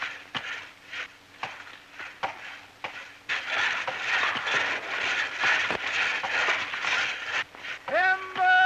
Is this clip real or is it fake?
real